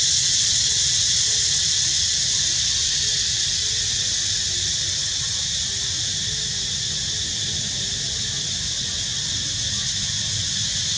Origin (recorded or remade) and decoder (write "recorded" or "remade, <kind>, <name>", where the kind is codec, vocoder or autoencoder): recorded